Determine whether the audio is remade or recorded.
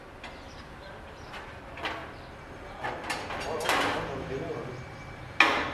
recorded